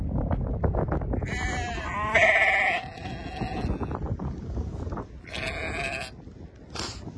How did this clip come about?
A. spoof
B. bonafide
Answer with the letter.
B